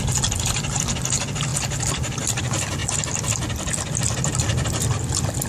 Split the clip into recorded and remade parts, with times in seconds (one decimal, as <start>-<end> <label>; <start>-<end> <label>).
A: 0.0-5.5 recorded